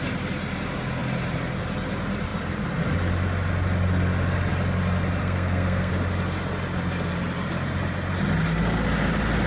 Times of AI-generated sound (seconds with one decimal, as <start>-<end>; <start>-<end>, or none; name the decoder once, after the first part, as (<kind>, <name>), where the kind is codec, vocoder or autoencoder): 5.2-5.9 (codec, SNAC)